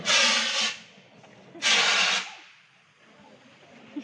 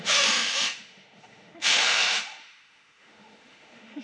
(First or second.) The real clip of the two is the first